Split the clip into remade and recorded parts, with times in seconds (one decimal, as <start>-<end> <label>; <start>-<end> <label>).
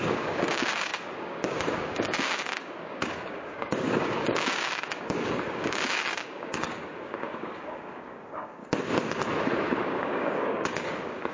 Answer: 0.0-8.6 remade; 8.6-9.8 recorded; 9.8-11.3 remade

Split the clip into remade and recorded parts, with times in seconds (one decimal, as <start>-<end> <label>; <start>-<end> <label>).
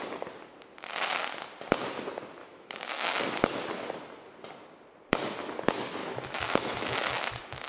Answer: 0.0-2.4 recorded; 2.4-3.2 remade; 3.2-6.0 recorded; 6.0-7.7 remade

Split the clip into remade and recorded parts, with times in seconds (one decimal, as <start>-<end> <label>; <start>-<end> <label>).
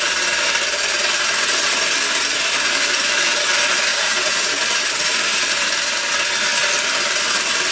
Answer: 0.0-3.9 recorded; 3.9-4.5 remade; 4.5-7.7 recorded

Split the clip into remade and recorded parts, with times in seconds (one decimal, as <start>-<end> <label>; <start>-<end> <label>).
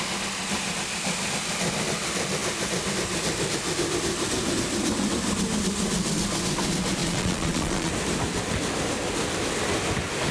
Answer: 0.0-7.0 recorded; 7.0-7.9 remade; 7.9-10.3 recorded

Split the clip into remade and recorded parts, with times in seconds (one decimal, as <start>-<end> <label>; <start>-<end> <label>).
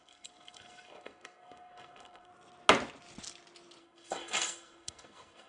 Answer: 0.0-2.3 remade; 2.3-3.8 recorded; 3.8-5.5 remade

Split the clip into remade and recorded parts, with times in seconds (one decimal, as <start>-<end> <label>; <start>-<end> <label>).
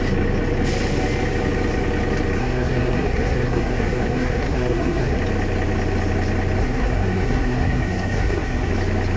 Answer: 0.0-2.4 recorded; 2.4-5.2 remade; 5.2-6.6 recorded; 6.6-8.7 remade; 8.7-9.2 recorded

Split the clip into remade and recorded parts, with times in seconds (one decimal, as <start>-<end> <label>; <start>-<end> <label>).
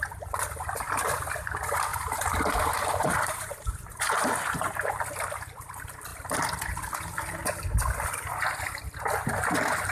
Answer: 0.0-1.9 recorded; 1.9-5.0 remade; 5.0-9.9 recorded